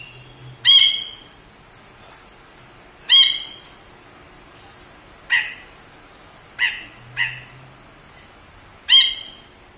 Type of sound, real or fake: real